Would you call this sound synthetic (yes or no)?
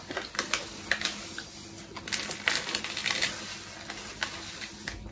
no